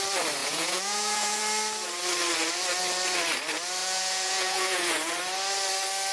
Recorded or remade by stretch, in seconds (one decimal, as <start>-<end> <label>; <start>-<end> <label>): 0.0-0.4 recorded; 0.4-1.4 remade; 1.4-3.8 recorded; 3.8-5.1 remade; 5.1-6.1 recorded

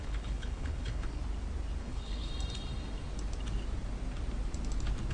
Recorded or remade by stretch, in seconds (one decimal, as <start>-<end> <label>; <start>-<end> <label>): 0.0-1.2 remade; 1.2-1.8 recorded; 1.8-2.3 remade; 2.3-5.1 recorded